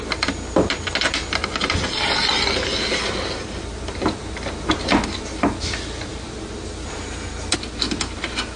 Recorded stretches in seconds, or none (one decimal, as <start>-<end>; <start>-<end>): 0.0-8.6